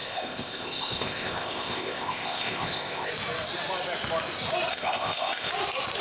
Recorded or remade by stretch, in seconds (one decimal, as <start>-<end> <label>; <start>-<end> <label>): 0.0-3.1 remade; 3.1-4.7 recorded; 4.7-5.5 remade; 5.5-6.0 recorded